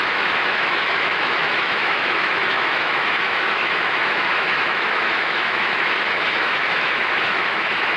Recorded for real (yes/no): no